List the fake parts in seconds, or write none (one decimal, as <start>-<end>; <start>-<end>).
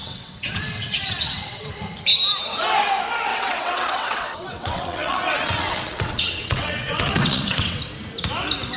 0.0-1.7; 3.3-7.8